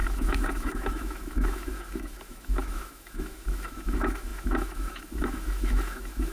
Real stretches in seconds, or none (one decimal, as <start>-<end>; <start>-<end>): none